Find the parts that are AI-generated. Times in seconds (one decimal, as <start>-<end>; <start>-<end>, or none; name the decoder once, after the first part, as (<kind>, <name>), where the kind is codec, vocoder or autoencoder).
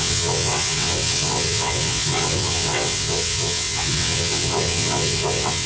0.0-5.7 (vocoder, WaveNeXt)